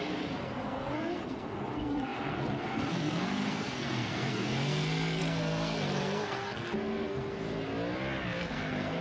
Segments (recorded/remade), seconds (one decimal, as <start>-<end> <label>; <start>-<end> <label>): 0.0-7.7 remade; 7.7-8.4 recorded; 8.4-9.0 remade